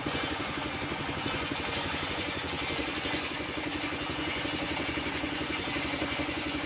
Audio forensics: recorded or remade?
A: remade